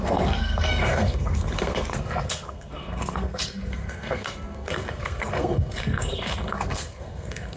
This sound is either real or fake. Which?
fake